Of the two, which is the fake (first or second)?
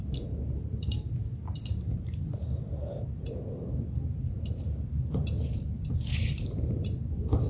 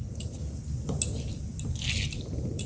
first